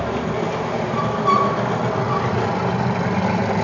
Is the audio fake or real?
real